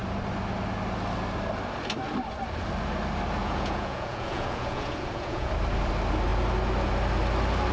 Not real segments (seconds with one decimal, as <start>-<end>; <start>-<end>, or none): 3.4-5.5